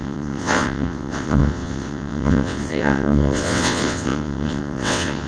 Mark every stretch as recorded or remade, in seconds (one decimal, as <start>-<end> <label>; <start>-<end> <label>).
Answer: 0.0-5.3 remade